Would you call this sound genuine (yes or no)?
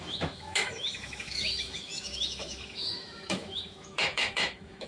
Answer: no